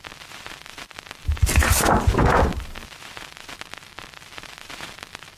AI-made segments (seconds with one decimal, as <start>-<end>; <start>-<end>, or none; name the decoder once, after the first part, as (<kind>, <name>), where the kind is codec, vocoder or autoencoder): none